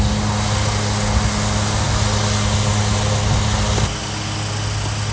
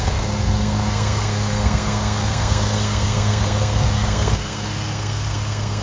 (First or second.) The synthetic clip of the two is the second